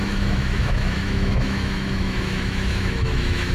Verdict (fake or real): fake